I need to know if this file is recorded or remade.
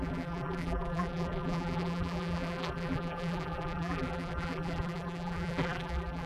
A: remade